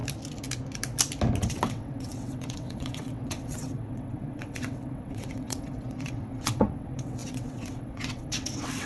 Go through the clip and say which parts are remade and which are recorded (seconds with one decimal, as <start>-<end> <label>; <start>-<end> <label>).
0.0-1.4 recorded; 1.4-8.9 remade